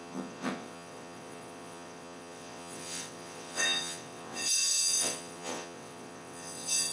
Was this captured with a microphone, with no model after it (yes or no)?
no